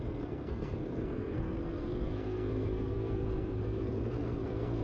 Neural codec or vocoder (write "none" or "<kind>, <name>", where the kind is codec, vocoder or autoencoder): codec, SNAC